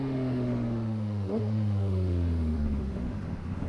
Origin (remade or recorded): remade